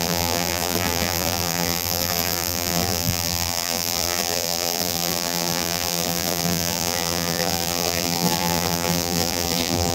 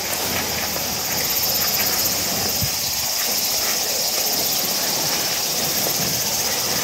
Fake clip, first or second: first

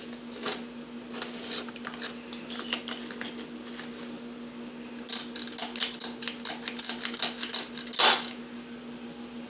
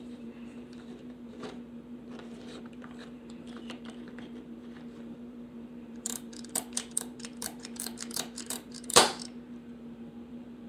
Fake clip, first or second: second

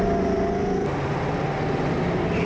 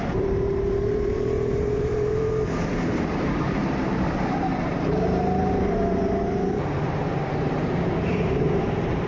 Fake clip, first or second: second